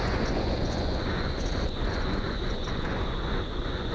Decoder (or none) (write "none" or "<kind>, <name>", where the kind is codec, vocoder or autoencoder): vocoder, Vocos